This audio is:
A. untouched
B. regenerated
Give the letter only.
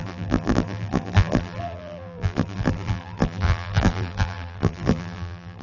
B